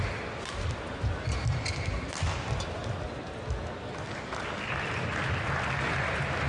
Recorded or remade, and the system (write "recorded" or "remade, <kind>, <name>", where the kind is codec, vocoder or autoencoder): recorded